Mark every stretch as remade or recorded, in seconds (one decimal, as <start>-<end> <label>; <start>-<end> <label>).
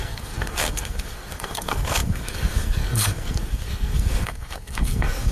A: 0.0-5.3 remade